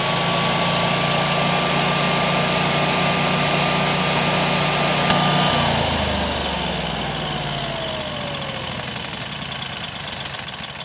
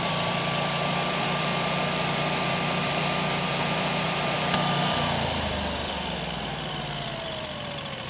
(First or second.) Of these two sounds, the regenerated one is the second